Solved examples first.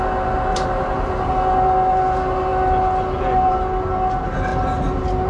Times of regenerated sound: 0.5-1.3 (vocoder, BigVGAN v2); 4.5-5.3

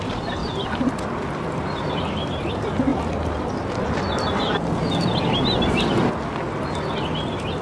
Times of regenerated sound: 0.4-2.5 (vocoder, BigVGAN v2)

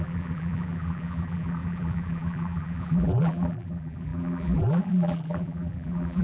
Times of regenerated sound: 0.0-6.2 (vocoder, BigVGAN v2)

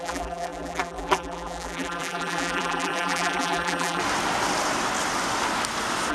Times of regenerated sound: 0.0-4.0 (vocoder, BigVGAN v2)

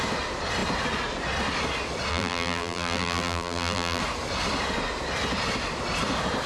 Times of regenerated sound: 2.1-4.0 (vocoder, BigVGAN v2)